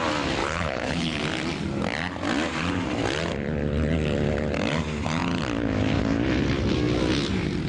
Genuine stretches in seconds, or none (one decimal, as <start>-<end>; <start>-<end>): 0.0-0.4; 1.2-7.7